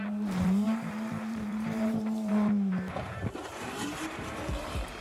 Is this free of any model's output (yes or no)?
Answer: no